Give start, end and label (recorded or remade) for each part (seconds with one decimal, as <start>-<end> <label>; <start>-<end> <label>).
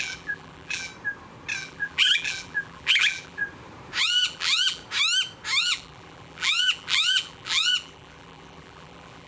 0.0-0.9 remade; 0.9-1.6 recorded; 1.6-3.4 remade; 3.4-4.0 recorded; 4.0-4.8 remade; 4.8-5.6 recorded; 5.6-9.3 remade